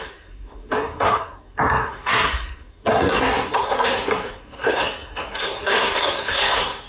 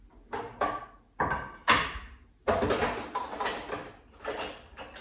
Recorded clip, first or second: second